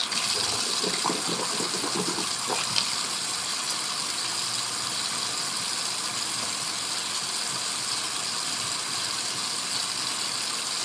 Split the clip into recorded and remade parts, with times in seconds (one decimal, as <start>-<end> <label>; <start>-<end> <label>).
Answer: 0.0-10.8 recorded